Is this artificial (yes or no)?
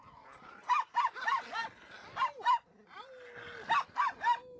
no